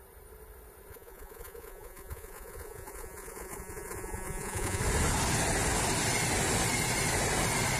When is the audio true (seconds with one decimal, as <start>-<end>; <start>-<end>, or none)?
0.0-0.9; 4.8-7.8

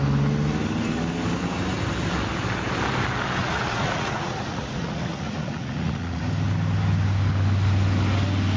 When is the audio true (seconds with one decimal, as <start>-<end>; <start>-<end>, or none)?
0.0-3.4; 6.2-8.6

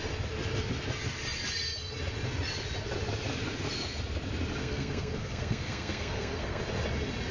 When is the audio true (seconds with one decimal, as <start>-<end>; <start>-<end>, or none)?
0.0-4.6; 6.6-7.3

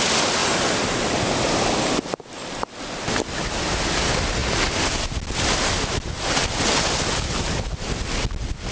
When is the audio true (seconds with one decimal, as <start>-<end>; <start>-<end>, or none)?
0.0-8.7

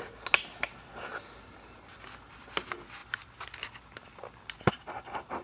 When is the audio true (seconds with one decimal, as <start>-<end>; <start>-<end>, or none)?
0.0-5.4

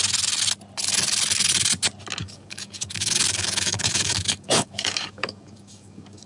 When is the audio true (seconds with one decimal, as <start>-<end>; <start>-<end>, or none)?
0.0-2.2

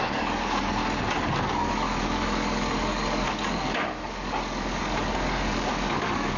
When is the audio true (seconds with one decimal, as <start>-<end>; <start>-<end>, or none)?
0.8-1.4